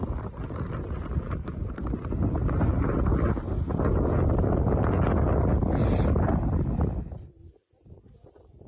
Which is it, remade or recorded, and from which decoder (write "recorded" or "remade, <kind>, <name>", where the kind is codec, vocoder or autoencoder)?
recorded